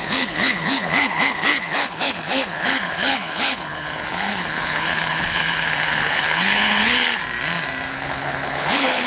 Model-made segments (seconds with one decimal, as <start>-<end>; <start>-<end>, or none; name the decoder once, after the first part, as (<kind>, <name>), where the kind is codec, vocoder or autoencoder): 0.0-7.2 (codec, HILCodec); 7.9-9.1